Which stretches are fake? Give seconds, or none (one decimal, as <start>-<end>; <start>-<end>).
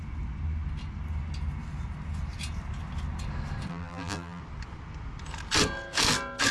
3.7-4.4